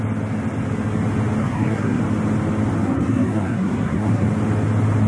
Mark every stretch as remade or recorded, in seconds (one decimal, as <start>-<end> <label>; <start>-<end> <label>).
0.0-1.4 recorded; 1.4-2.0 remade; 2.0-2.8 recorded; 2.8-4.3 remade; 4.3-5.1 recorded